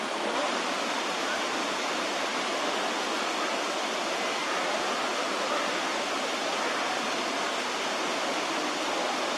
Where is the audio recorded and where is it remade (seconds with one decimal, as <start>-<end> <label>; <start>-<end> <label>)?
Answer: 0.0-4.4 recorded; 4.4-6.5 remade; 6.5-9.4 recorded